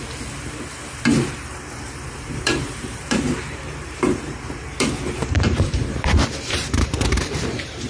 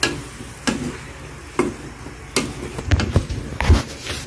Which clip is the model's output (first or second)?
first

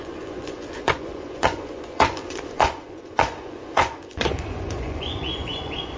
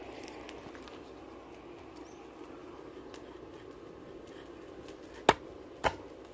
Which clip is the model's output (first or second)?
first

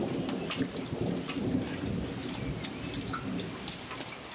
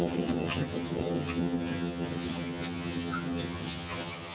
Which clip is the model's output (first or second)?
second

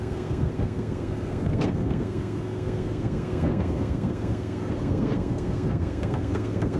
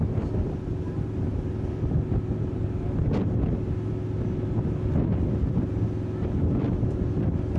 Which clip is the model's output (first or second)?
first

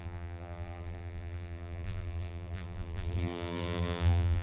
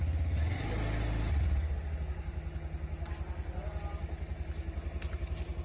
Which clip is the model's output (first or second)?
first